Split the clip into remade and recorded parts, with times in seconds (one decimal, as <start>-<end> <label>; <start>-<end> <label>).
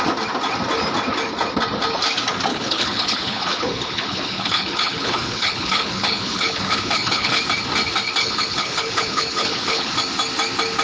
0.0-2.5 recorded; 2.5-7.4 remade; 7.4-8.2 recorded; 8.2-9.9 remade; 9.9-10.8 recorded